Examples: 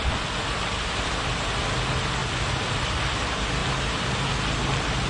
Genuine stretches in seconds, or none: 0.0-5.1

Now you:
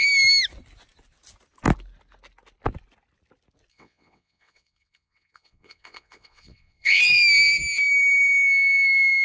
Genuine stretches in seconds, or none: 0.0-3.7; 7.0-9.2

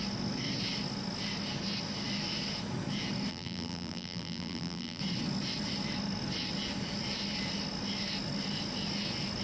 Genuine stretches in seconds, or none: 0.0-3.3; 5.0-9.4

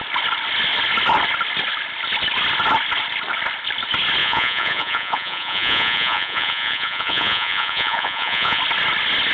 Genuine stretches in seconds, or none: 0.0-4.2; 8.6-9.3

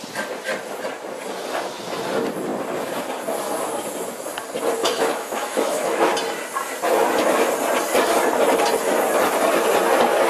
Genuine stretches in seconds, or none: 0.0-4.8; 6.1-10.3

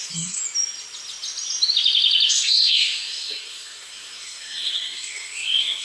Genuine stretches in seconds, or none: 0.4-2.3

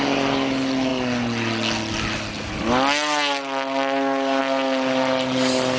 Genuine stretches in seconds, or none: 0.0-5.8

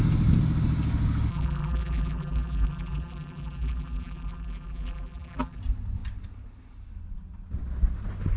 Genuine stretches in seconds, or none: 0.0-1.3; 5.6-8.4